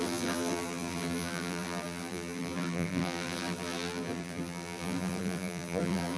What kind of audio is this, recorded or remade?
remade